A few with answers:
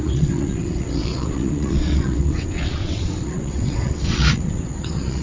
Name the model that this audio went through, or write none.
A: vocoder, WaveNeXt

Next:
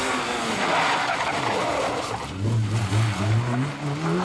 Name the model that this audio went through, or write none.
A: none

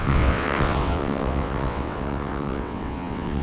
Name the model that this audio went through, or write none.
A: vocoder, WaveNeXt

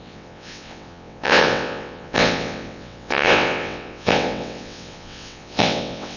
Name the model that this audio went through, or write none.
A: vocoder, WaveNeXt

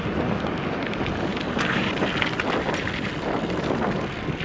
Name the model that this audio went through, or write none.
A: none